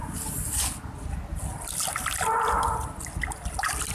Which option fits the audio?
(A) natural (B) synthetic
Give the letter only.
A